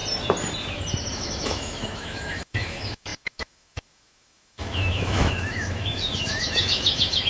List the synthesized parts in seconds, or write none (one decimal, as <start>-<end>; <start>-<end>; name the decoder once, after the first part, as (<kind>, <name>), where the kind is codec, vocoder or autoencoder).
1.1-7.3 (autoencoder, DAC-VAE)